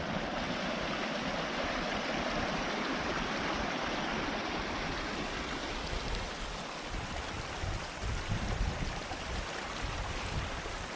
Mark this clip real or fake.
real